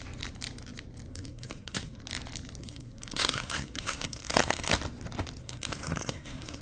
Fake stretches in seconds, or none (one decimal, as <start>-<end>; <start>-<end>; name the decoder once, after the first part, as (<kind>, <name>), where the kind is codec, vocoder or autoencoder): 1.1-2.0 (codec, SNAC); 2.6-4.7; 5.4-6.6